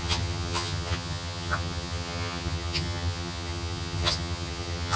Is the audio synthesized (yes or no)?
yes